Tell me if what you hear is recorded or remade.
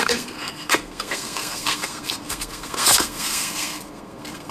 remade